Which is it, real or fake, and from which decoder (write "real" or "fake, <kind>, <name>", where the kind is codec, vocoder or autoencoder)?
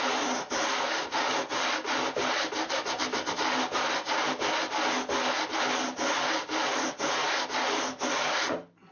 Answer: real